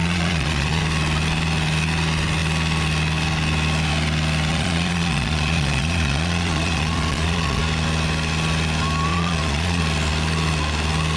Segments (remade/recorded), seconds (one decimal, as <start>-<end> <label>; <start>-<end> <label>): 0.0-0.8 remade; 0.8-4.5 recorded; 4.5-7.6 remade; 7.6-9.1 recorded; 9.1-9.8 remade; 9.8-11.2 recorded